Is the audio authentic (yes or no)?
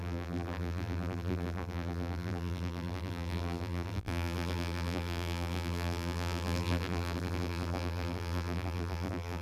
no